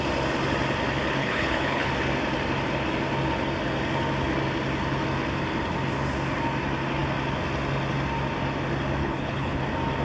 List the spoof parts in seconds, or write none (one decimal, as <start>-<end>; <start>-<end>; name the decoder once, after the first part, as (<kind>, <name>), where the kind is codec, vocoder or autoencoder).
1.2-1.9 (codec, HILCodec); 9.0-9.6